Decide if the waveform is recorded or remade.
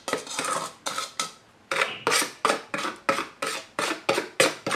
recorded